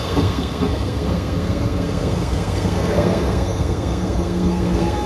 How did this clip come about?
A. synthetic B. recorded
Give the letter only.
A